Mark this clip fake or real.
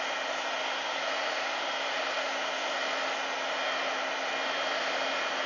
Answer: real